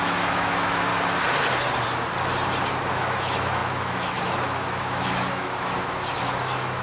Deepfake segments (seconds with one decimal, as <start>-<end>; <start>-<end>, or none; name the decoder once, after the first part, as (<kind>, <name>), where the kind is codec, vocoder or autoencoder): 0.0-0.9 (autoencoder, DAC-VAE); 2.9-6.8